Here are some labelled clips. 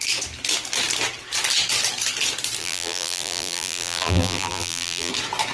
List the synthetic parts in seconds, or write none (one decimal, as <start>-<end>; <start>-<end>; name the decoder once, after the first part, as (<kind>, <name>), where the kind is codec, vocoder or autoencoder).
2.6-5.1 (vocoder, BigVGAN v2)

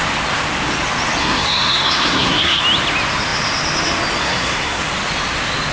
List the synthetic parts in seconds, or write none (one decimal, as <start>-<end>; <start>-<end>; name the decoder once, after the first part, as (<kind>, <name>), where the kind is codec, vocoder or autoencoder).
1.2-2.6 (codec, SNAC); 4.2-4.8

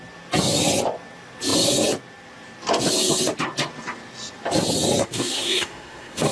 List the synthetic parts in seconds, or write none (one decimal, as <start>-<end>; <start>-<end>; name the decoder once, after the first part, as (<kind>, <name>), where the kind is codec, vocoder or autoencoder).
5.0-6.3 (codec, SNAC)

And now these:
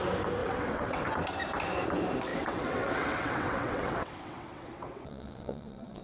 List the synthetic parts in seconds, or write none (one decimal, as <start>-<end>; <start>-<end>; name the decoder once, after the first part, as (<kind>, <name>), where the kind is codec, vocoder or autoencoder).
0.4-1.1 (vocoder, WaveNeXt); 2.3-6.0